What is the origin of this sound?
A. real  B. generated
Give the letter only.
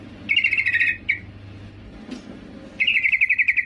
A